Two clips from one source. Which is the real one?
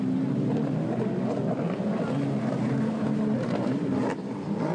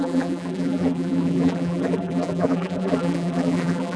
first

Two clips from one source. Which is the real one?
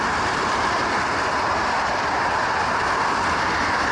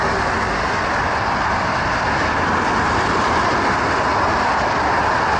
second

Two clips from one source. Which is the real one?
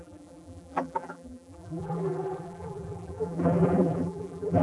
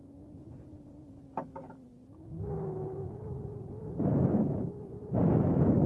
second